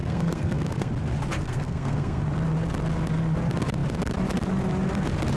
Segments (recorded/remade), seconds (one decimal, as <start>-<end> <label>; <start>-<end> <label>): 0.0-0.9 remade; 0.9-1.4 recorded; 1.4-2.2 remade; 2.2-5.4 recorded